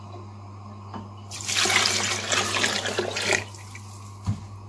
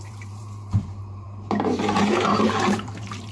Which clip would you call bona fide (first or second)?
first